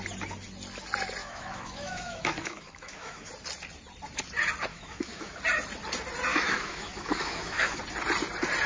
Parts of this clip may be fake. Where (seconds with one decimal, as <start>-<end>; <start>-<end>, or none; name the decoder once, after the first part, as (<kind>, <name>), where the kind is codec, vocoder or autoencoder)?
1.2-3.3 (autoencoder, DAC-VAE); 4.7-5.4; 6.3-7.8